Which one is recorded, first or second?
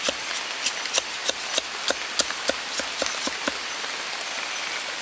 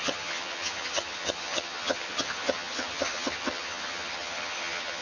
first